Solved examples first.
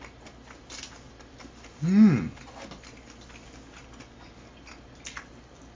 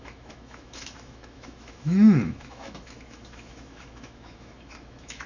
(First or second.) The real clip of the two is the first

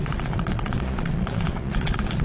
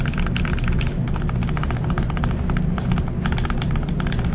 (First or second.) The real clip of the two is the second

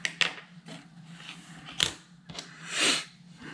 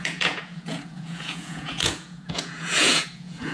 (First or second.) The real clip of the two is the first